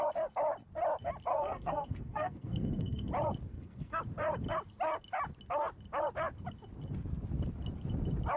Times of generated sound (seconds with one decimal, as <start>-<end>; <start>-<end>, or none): 1.3-3.1; 3.5-4.0